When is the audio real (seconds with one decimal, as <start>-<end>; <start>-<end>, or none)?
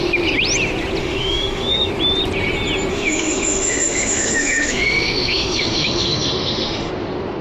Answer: 0.0-1.0; 1.9-2.9; 6.9-7.4